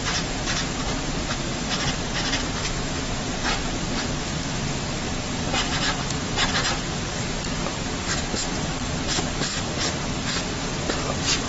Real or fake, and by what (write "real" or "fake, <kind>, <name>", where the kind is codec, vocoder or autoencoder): fake, vocoder, BigVGAN v2